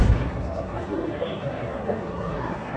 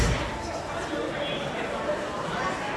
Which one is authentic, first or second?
second